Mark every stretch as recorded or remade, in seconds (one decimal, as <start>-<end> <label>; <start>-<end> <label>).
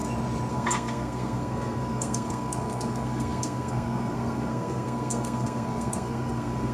0.0-0.5 recorded; 0.5-6.7 remade